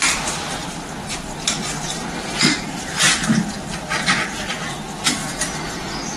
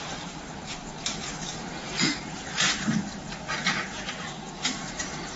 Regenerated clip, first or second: second